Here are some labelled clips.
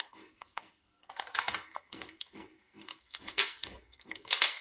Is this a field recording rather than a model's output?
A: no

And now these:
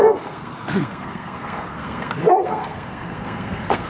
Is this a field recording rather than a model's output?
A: no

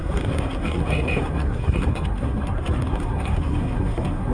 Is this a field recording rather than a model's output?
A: no